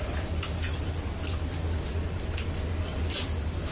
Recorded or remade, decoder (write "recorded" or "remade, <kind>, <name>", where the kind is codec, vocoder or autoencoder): recorded